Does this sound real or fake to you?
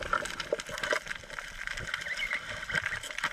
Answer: real